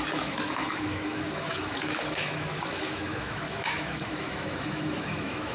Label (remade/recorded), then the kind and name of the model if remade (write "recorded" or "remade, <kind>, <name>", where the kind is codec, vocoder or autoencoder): remade, autoencoder, DAC-VAE